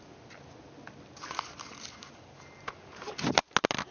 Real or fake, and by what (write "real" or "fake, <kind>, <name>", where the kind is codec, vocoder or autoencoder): real